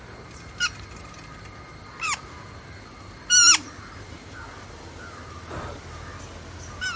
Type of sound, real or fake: real